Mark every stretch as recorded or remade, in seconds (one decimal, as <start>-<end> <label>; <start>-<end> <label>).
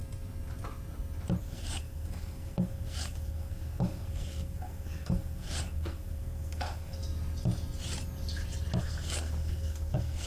0.0-1.4 recorded; 1.4-7.0 remade; 7.0-8.8 recorded; 8.8-10.3 remade